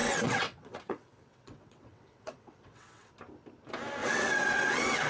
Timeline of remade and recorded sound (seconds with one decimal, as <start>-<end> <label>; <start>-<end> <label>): 0.0-3.1 remade; 3.1-4.0 recorded; 4.0-5.1 remade